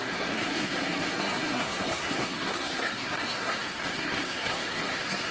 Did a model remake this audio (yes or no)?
yes